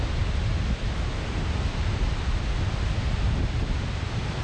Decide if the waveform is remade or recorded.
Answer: recorded